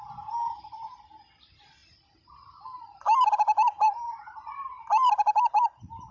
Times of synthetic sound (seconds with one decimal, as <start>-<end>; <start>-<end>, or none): 1.8-4.9

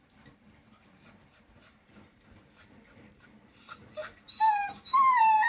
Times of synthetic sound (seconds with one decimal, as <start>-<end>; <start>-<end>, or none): 0.0-5.5

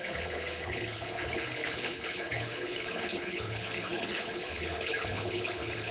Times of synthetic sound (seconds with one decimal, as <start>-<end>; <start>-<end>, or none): 0.0-5.9

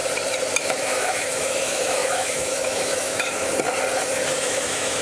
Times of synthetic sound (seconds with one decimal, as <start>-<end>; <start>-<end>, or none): 0.6-3.5; 4.4-5.0